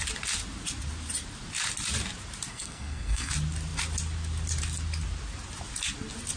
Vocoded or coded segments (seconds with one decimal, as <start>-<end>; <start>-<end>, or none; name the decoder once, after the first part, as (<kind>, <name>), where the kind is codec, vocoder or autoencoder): 2.5-3.3 (codec, SNAC)